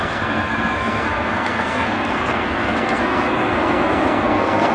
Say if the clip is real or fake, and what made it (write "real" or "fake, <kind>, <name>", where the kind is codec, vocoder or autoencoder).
fake, codec, SNAC